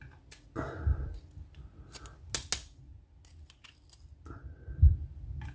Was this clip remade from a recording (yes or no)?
no